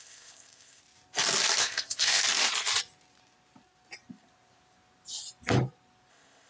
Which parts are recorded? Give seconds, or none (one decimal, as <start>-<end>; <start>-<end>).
0.8-1.6; 2.2-6.1